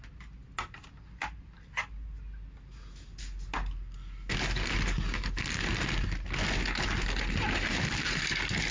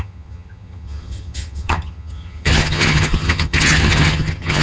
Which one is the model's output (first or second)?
second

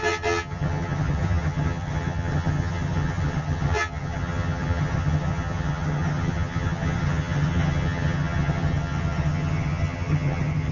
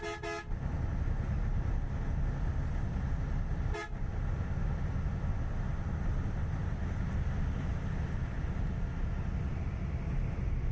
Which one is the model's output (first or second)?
first